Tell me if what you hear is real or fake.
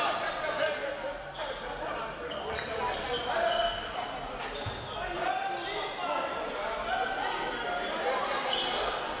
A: real